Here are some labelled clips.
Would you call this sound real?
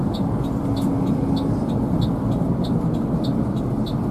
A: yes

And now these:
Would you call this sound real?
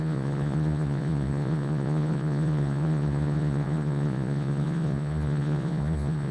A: no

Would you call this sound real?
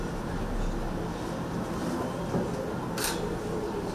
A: yes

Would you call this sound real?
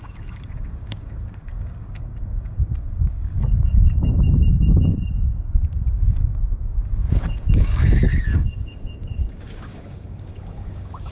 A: no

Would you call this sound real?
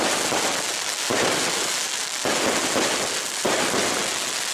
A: yes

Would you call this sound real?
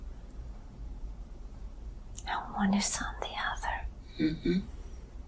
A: no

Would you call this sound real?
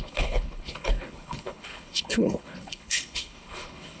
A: no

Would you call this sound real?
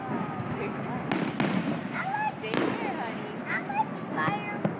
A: yes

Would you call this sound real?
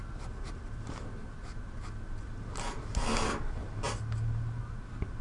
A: yes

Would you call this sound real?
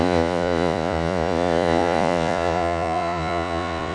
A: no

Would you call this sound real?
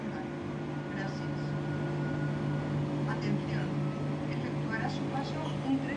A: yes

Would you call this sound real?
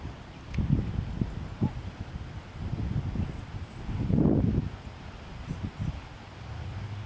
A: yes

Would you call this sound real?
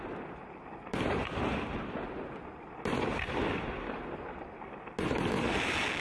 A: yes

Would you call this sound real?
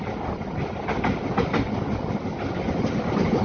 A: yes